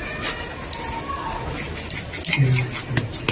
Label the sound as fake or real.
real